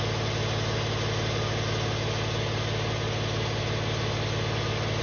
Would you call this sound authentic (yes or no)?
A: yes